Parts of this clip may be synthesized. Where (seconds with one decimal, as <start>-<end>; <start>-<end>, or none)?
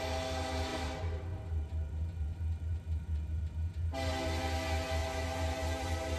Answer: 0.7-4.4; 5.0-6.2